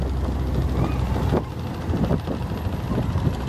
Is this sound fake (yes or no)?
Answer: no